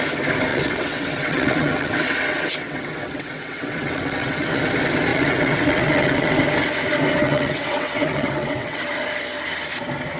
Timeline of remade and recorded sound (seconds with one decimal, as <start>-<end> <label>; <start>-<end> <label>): 0.0-0.5 recorded; 0.5-4.6 remade; 4.6-5.1 recorded; 5.1-6.3 remade; 6.3-7.2 recorded; 7.2-8.8 remade; 8.8-10.2 recorded